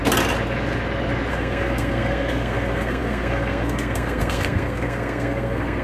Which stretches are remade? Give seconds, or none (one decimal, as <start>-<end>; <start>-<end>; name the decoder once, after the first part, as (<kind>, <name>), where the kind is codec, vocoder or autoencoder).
1.3-5.8 (codec, SNAC)